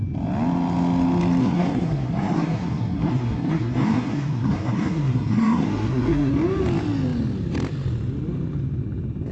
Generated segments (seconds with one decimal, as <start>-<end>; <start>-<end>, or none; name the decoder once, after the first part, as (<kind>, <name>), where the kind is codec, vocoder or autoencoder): 1.4-6.3 (codec, SNAC)